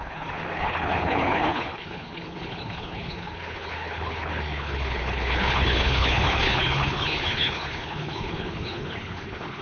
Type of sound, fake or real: fake